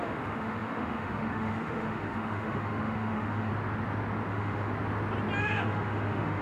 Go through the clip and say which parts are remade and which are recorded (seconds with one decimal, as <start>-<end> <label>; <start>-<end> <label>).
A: 0.0-3.5 remade; 3.5-4.3 recorded; 4.3-4.7 remade; 4.7-5.4 recorded; 5.4-6.4 remade